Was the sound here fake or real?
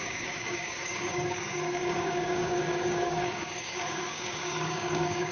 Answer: fake